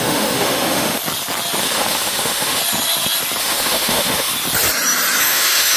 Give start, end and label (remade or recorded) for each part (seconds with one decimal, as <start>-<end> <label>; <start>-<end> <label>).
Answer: 0.0-1.0 remade; 1.0-1.6 recorded; 1.6-2.6 remade; 2.6-3.4 recorded; 3.4-4.3 remade; 4.3-5.2 recorded; 5.2-5.8 remade